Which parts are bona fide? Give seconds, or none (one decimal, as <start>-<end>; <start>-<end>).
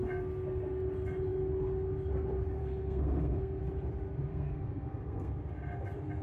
0.0-2.6; 3.6-4.3; 5.3-6.2